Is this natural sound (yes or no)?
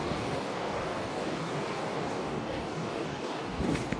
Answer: no